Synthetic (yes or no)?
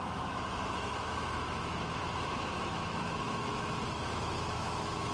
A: yes